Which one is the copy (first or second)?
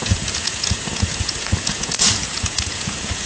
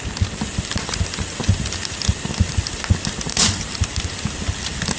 first